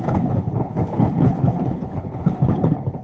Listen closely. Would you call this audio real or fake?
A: fake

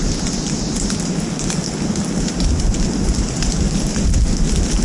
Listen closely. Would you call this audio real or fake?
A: real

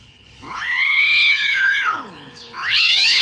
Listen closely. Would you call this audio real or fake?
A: fake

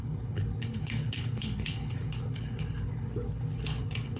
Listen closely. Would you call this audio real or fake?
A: fake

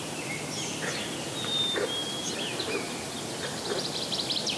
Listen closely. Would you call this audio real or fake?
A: real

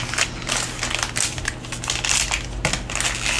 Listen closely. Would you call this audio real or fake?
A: real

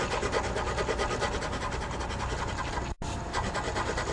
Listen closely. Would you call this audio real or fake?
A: real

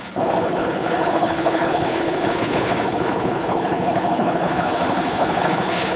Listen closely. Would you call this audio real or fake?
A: fake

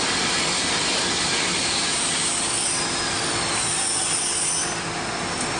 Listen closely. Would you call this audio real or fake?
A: real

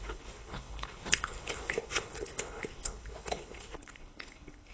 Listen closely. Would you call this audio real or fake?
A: fake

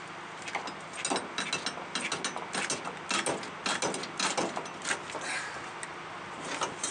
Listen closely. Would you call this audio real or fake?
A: real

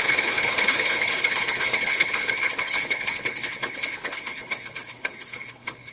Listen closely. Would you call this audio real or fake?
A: fake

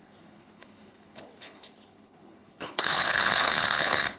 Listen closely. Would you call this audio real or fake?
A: fake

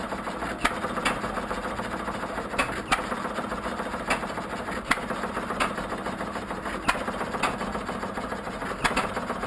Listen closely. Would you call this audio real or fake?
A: real